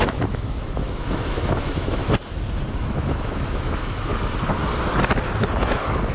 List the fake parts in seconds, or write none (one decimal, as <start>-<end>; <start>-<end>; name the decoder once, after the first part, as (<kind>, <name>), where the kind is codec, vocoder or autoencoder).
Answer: 0.0-2.0 (autoencoder, DAC-VAE); 2.7-4.1; 5.6-6.1